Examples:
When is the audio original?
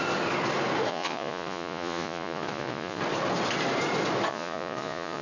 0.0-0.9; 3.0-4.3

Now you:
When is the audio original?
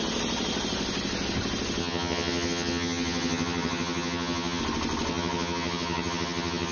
0.0-1.8; 4.6-5.1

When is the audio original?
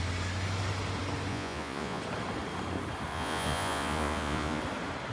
0.0-1.3; 2.0-3.1; 4.6-5.1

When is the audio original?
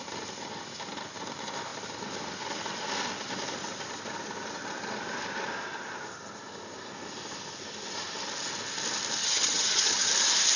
0.0-9.2; 10.1-10.6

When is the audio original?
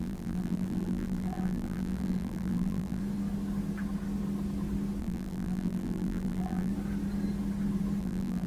3.0-5.0; 6.7-8.0